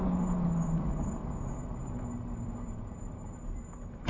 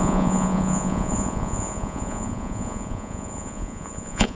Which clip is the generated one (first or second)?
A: second